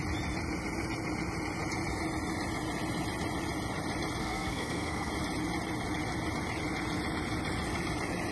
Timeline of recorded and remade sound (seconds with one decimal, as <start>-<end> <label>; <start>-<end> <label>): 0.0-4.2 recorded; 4.2-5.1 remade; 5.1-8.3 recorded